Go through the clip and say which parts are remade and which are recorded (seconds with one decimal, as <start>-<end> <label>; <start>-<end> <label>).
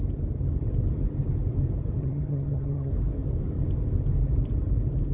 0.0-2.0 recorded; 2.0-2.9 remade; 2.9-5.1 recorded